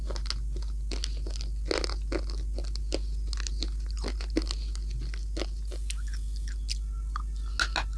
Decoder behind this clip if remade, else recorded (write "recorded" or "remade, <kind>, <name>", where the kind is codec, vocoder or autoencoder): recorded